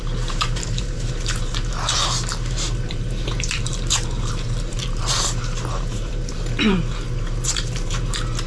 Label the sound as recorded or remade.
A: remade